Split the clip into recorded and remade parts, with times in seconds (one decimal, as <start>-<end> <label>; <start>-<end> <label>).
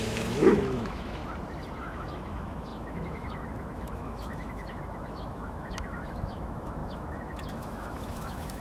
0.0-1.2 remade; 1.2-1.8 recorded; 1.8-8.6 remade